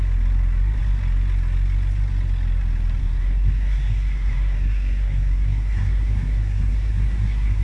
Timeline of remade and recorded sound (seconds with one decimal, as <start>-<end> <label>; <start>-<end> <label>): 0.0-3.0 recorded; 3.0-7.6 remade